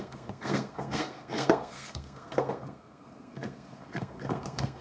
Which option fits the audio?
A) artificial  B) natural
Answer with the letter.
A